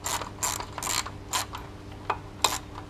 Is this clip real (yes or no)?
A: yes